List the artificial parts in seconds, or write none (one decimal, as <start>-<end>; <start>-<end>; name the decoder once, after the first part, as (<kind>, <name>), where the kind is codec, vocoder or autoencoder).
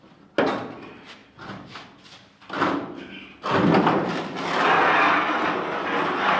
none